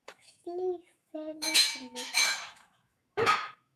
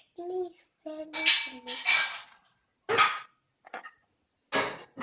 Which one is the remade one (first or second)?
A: first